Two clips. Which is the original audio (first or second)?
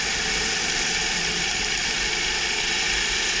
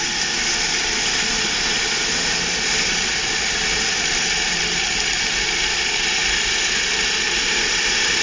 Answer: first